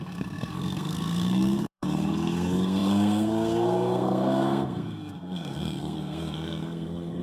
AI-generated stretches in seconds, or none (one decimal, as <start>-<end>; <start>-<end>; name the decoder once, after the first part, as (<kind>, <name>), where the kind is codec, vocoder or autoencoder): 0.0-7.2 (codec, SNAC)